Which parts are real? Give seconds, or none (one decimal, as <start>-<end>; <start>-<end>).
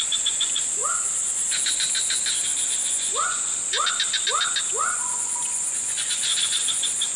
0.8-2.9; 3.5-4.7